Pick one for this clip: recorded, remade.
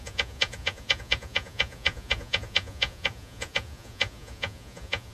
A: remade